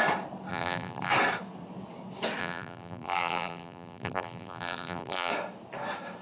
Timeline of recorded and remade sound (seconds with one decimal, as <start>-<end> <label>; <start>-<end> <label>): 0.0-0.5 recorded; 0.5-1.1 remade; 1.1-2.4 recorded; 2.4-5.3 remade; 5.3-6.2 recorded